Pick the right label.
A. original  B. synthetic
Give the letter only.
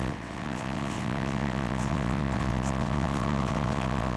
B